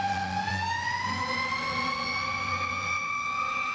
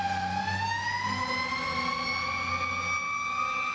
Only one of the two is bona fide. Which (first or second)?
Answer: second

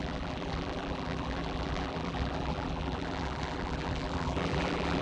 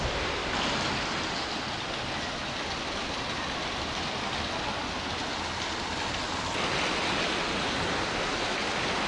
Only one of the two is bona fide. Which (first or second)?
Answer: second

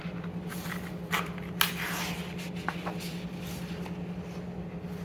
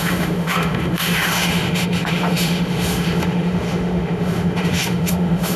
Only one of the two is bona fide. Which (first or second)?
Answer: first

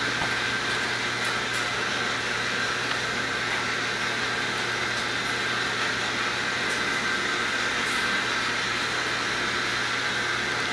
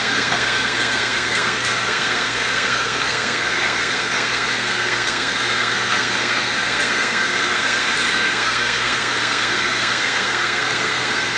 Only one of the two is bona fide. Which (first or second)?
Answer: first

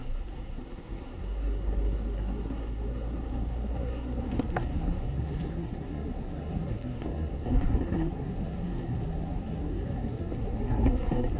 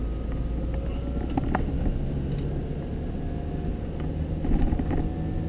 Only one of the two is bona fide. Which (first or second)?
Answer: second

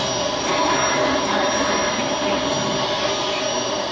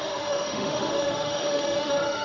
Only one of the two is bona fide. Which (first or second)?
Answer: first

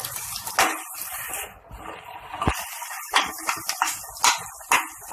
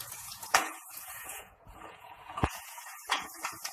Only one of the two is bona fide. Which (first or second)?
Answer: first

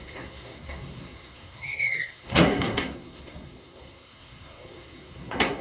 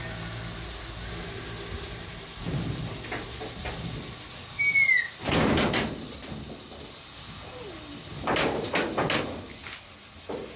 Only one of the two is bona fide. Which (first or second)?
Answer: second